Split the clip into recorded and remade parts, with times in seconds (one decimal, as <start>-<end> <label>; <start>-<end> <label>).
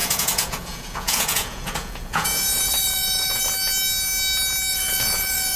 0.0-3.4 remade; 3.4-4.7 recorded; 4.7-5.6 remade